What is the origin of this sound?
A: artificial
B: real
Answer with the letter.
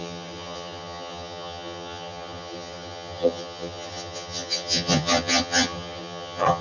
A